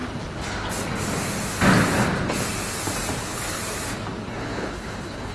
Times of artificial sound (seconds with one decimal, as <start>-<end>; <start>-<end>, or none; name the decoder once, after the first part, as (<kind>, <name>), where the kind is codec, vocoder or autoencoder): 3.2-3.6 (codec, HILCodec); 4.3-5.3